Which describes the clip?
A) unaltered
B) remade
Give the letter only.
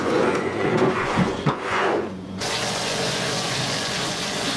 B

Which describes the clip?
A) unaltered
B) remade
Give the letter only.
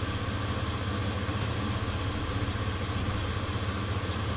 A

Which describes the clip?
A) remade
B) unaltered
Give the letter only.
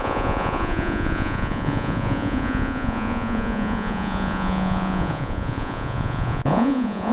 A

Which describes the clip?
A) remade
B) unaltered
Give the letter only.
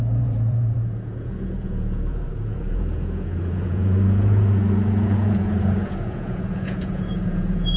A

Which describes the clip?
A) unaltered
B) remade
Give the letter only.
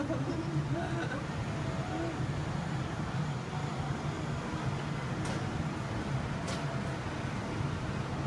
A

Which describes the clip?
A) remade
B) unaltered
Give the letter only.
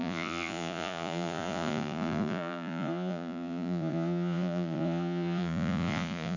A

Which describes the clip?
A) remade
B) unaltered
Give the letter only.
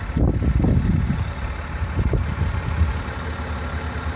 B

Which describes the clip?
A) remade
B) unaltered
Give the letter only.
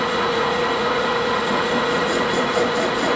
A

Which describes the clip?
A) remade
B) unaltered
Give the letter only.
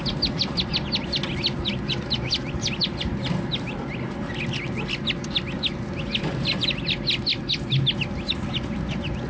B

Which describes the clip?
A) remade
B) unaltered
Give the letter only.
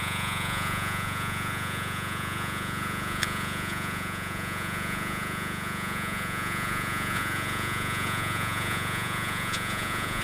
A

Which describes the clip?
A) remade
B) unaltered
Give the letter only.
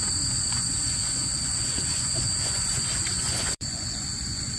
A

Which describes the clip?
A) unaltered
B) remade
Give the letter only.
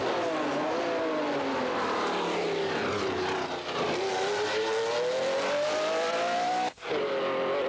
A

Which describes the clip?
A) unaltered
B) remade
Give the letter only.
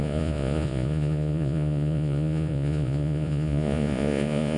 B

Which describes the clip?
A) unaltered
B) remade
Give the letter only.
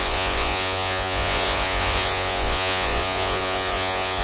B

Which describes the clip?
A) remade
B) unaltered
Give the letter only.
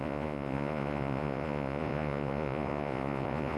A